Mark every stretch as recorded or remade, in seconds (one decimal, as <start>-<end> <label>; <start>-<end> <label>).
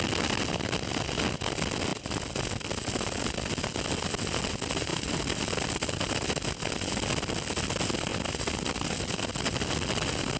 0.0-4.9 recorded; 4.9-6.1 remade; 6.1-8.1 recorded; 8.1-9.3 remade; 9.3-10.4 recorded